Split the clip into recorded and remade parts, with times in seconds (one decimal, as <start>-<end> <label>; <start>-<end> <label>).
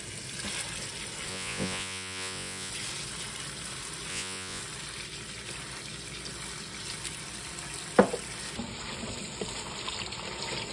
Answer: 0.0-1.3 recorded; 1.3-2.7 remade; 2.7-4.1 recorded; 4.1-4.6 remade; 4.6-10.7 recorded